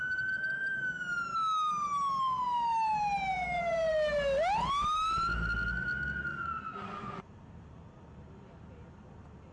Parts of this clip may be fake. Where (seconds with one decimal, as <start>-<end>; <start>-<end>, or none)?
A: 6.3-7.3